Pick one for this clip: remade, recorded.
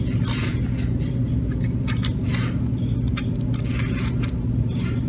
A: recorded